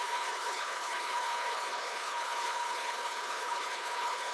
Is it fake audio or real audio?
fake